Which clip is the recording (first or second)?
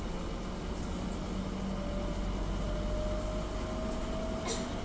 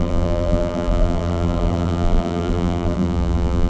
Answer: first